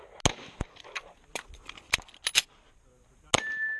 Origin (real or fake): real